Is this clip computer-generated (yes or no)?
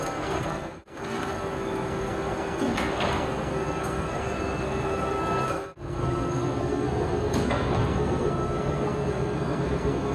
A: yes